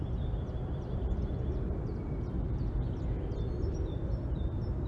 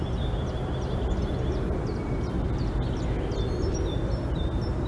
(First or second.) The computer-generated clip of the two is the first